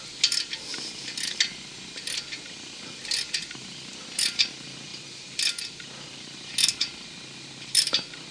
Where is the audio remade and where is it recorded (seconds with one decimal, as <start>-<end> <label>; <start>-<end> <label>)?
0.0-8.3 recorded